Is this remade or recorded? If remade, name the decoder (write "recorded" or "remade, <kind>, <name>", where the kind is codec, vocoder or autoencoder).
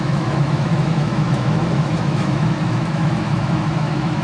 remade, autoencoder, DAC-VAE